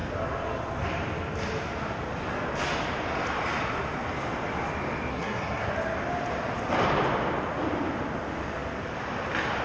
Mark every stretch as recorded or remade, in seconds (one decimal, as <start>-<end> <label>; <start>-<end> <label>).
0.0-5.1 recorded; 5.1-5.7 remade; 5.7-9.6 recorded